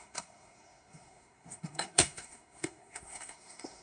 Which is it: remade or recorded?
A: remade